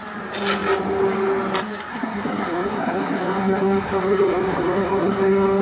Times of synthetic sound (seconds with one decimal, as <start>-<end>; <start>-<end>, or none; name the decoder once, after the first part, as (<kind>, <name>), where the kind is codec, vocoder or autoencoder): 1.9-5.6 (codec, SNAC)